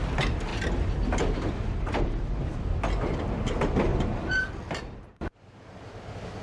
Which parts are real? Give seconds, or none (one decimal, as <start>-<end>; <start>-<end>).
0.0-3.9; 5.1-6.4

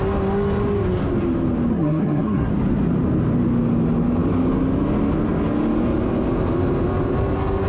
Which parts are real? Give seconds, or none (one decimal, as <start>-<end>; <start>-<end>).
0.0-1.7; 2.5-7.7

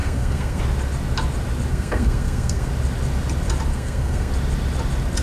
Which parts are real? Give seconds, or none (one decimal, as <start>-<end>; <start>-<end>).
0.6-1.7; 2.7-3.7; 4.3-5.2

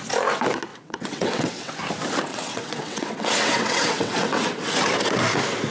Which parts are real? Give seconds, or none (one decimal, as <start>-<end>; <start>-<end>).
0.0-0.7; 1.7-2.3; 4.4-5.7

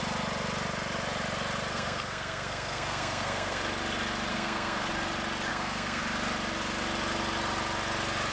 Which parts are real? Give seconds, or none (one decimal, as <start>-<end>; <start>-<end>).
0.0-1.7; 3.6-4.3; 4.9-5.5; 6.0-8.3

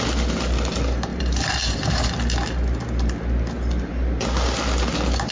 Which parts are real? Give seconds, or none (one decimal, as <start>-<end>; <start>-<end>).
0.0-1.1; 2.1-5.3